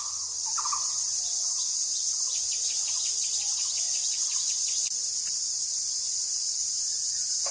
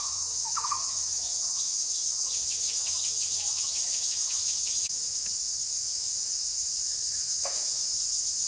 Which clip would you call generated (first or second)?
second